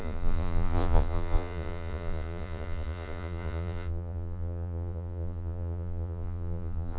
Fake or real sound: fake